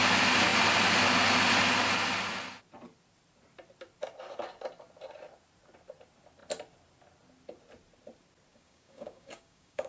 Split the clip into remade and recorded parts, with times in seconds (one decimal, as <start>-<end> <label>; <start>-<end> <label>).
0.0-8.5 recorded; 8.5-9.9 remade